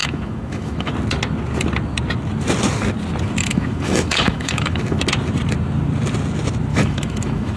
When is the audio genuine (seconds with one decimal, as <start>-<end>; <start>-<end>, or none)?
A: 0.9-3.4; 5.0-6.7